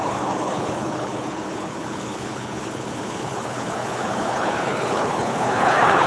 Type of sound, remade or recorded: remade